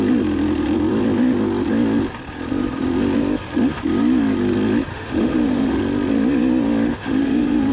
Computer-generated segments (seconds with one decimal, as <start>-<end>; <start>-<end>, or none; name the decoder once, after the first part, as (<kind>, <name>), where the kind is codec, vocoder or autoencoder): 4.9-5.8 (autoencoder, DAC-VAE); 6.9-7.7